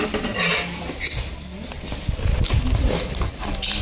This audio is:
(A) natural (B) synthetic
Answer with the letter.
A